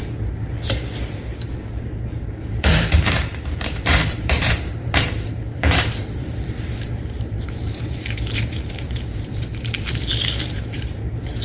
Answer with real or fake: fake